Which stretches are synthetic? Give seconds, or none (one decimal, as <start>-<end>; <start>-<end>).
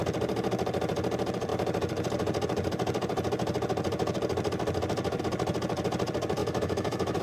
6.4-7.2